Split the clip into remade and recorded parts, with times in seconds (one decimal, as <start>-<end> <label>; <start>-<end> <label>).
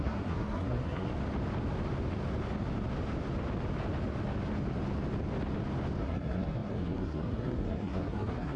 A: 0.0-1.1 remade; 1.1-6.0 recorded; 6.0-8.6 remade